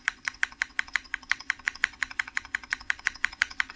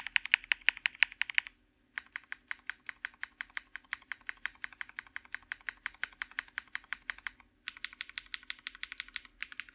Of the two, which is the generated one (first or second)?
first